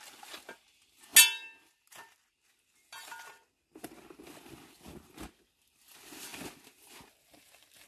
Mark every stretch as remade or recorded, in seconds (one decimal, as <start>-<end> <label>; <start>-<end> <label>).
0.0-7.9 recorded